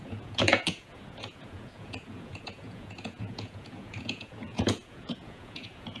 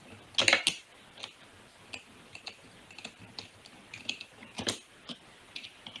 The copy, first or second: first